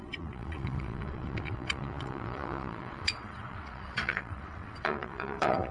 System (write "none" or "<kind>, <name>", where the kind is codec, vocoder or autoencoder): vocoder, WaveNeXt